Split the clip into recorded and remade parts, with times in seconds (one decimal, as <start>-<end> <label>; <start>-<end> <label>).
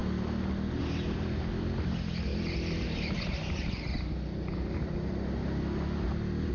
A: 0.0-6.5 recorded